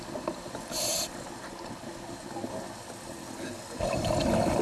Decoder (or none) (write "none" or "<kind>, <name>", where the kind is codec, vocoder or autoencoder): none